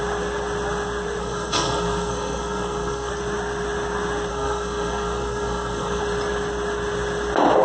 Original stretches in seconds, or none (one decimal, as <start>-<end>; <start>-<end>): 0.0-1.2; 3.1-4.3; 6.0-7.6

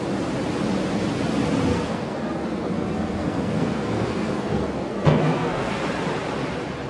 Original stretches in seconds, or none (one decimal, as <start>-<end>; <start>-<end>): 0.0-1.7; 5.8-6.9

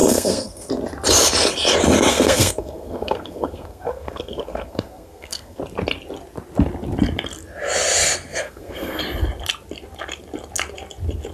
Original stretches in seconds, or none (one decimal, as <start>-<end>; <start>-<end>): 0.7-2.1; 5.6-8.3; 9.0-11.3

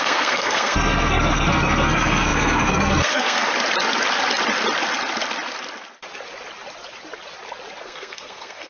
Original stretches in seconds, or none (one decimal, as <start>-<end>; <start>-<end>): 3.5-7.8

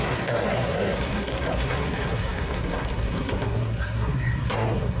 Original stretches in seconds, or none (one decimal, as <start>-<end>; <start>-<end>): none

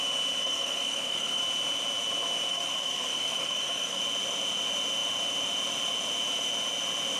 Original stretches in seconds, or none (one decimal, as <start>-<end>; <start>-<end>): 0.0-0.4; 1.4-2.5; 4.0-7.2